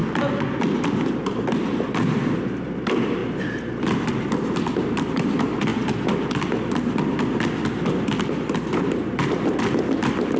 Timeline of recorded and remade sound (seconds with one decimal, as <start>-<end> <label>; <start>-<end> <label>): 0.0-0.7 recorded; 0.7-3.2 remade; 3.2-5.1 recorded; 5.1-10.4 remade